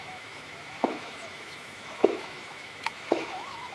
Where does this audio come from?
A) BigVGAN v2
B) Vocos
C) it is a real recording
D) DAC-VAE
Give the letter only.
D